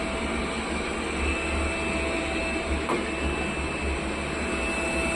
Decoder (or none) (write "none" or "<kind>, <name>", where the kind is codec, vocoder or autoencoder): none